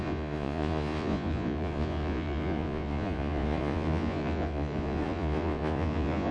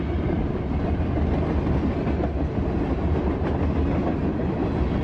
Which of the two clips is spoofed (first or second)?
first